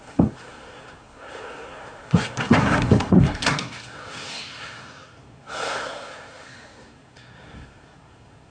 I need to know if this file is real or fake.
fake